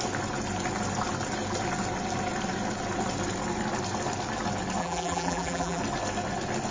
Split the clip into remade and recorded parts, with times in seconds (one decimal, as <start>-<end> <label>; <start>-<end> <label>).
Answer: 0.0-4.8 recorded; 4.8-5.8 remade; 5.8-6.7 recorded